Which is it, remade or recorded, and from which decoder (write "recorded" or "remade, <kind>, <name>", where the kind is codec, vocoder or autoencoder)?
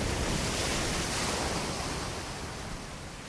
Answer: recorded